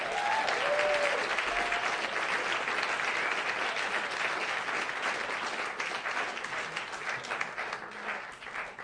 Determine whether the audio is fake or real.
real